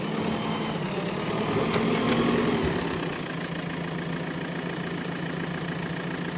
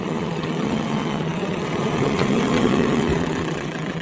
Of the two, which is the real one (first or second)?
first